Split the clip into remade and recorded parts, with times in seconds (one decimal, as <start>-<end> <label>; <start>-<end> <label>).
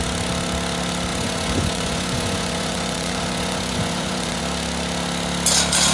0.0-1.1 recorded; 1.1-4.4 remade; 4.4-5.9 recorded